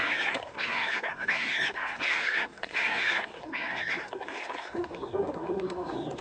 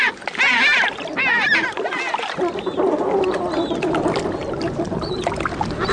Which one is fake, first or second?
first